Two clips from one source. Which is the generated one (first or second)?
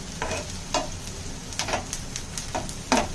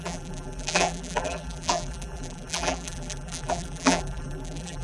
second